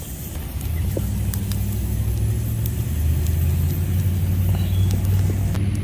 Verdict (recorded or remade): recorded